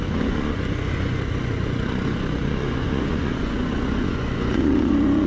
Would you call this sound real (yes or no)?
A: no